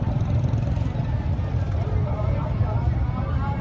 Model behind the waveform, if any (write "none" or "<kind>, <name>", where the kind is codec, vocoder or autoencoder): none